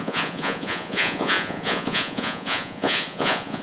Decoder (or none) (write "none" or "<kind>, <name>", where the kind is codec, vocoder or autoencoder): vocoder, Vocos